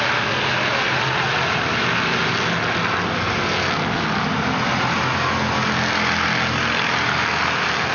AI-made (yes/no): no